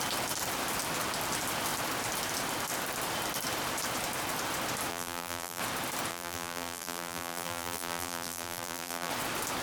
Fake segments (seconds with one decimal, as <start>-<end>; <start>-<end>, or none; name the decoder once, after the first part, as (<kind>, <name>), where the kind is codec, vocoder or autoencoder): 4.9-5.6 (vocoder, BigVGAN v2); 6.1-9.1